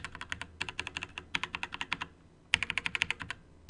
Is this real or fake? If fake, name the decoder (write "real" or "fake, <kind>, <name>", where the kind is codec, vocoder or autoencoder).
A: real